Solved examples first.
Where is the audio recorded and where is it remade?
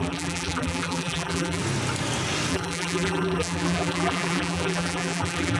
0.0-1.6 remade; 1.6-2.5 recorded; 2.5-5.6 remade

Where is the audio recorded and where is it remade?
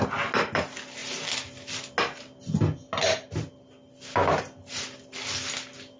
0.0-6.0 recorded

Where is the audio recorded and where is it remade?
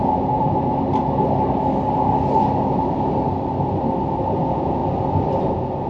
0.0-0.7 remade; 0.7-4.2 recorded; 4.2-4.8 remade; 4.8-5.5 recorded; 5.5-5.9 remade